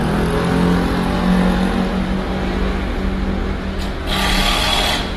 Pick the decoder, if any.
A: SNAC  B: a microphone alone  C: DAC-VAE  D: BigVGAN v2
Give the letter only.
B